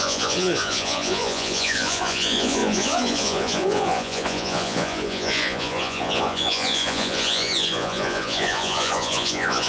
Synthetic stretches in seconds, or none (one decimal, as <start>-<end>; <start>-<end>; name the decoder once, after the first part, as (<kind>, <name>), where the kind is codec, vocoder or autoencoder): 0.0-9.7 (vocoder, Vocos)